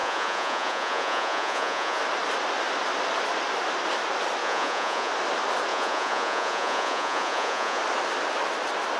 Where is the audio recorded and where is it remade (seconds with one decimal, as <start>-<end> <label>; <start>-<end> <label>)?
0.0-2.0 remade; 2.0-4.4 recorded; 4.4-5.1 remade; 5.1-5.7 recorded; 5.7-7.8 remade; 7.8-9.0 recorded